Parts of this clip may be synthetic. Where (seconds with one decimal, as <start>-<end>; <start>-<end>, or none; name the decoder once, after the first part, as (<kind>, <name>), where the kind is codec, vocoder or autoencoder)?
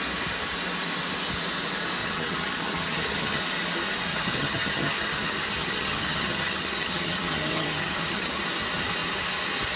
2.0-3.4 (vocoder, HiFi-GAN); 4.1-8.4